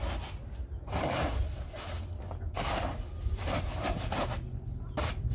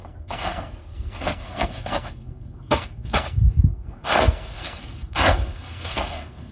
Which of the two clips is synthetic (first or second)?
second